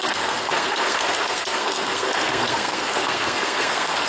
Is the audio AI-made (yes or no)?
yes